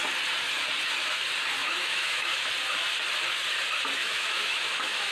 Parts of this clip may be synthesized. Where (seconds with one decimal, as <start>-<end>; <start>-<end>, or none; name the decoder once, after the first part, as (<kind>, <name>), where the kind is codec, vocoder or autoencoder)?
1.6-2.5 (autoencoder, DAC-VAE); 4.0-5.1